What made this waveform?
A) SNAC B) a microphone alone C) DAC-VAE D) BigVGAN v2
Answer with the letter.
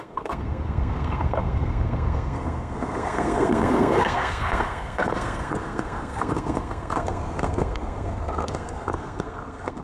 A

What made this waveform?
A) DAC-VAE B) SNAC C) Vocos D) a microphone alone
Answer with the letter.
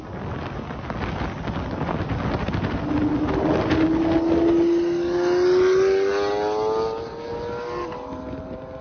D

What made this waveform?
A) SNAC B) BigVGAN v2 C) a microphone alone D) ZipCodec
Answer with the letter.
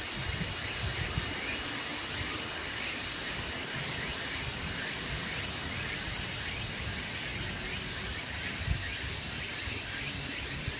C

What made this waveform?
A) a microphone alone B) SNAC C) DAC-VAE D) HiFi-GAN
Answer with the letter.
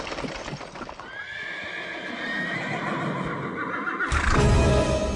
A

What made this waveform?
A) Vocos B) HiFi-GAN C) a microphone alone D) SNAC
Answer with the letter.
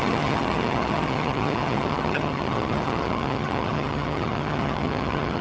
B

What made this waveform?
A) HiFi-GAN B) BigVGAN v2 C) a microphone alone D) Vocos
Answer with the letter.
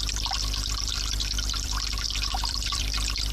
B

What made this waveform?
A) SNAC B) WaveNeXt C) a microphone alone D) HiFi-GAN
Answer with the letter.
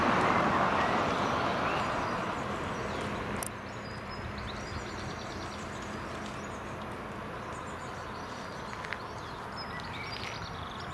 C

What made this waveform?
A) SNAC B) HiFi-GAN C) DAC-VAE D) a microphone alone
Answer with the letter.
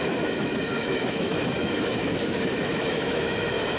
C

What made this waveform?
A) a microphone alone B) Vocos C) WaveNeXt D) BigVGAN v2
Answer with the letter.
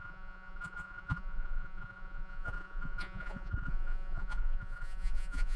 B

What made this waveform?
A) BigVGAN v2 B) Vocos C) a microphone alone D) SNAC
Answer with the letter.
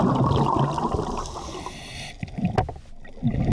C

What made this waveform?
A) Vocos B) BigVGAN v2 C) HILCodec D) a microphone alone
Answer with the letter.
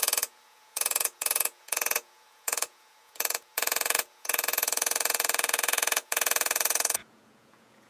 A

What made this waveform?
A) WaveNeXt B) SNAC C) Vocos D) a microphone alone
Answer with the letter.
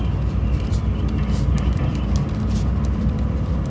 D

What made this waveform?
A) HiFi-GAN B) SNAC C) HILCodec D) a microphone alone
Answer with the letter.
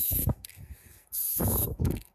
B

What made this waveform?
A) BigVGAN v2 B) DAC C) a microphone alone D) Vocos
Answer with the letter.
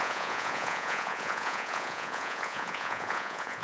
D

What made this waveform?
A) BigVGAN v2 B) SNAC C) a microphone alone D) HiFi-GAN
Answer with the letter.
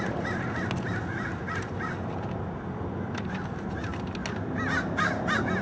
C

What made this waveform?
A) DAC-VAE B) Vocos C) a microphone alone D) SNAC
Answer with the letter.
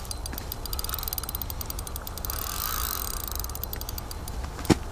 C